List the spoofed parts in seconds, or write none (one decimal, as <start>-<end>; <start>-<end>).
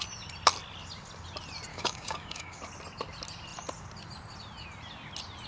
1.7-2.6